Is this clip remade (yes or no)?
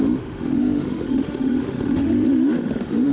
yes